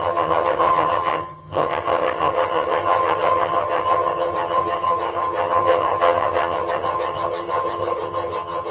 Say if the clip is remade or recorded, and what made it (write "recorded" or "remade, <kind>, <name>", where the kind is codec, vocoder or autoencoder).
remade, vocoder, HiFi-GAN